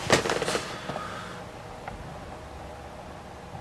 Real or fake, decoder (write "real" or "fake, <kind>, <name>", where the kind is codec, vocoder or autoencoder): real